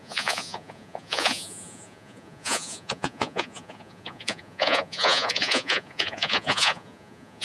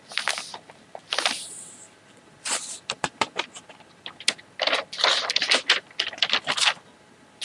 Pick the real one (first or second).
second